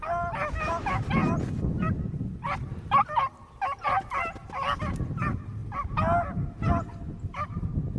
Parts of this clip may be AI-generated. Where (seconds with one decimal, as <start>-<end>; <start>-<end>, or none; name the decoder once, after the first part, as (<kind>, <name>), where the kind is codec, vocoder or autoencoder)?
none